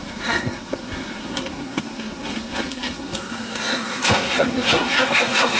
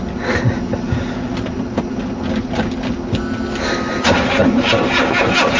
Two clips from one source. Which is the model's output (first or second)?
first